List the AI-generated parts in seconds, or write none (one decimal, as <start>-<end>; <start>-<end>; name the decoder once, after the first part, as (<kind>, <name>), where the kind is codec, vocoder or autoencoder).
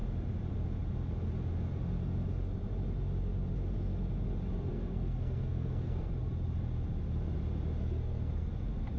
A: 4.7-6.1 (codec, SNAC); 7.8-8.5